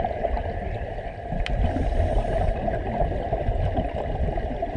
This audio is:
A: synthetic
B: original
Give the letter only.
B